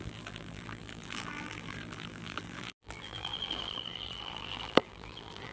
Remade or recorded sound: remade